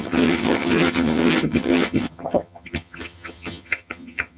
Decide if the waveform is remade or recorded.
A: remade